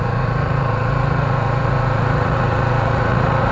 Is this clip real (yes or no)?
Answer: no